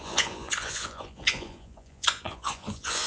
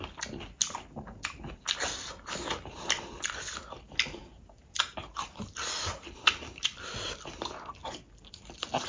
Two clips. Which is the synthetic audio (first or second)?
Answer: first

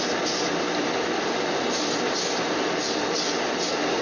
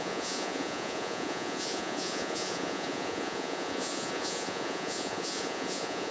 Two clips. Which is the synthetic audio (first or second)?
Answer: second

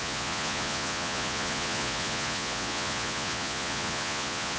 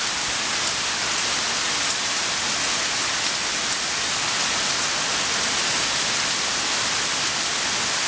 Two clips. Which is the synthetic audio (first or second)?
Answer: first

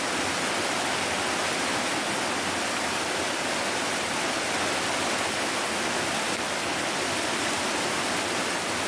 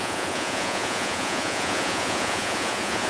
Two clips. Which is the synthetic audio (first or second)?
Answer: second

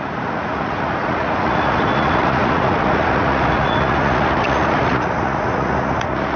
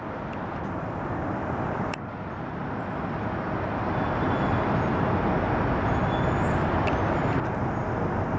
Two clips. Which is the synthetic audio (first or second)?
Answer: first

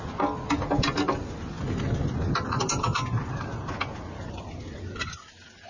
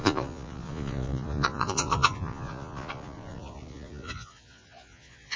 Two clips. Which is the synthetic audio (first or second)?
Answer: second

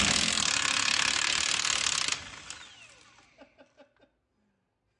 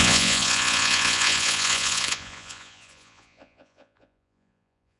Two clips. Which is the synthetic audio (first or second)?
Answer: second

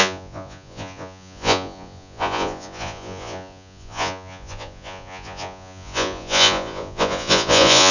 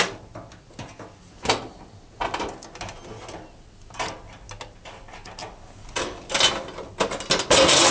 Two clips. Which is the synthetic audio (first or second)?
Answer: first